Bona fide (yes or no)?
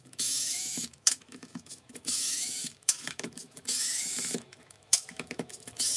no